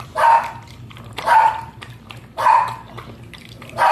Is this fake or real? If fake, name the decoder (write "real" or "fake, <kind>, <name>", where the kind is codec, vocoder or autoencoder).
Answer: fake, vocoder, BigVGAN v2